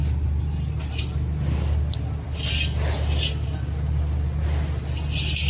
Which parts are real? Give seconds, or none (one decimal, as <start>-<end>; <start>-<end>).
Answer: 0.0-5.5